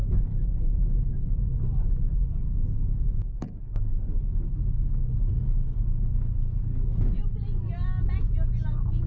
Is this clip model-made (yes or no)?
no